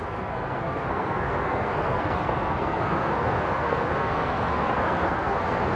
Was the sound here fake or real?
fake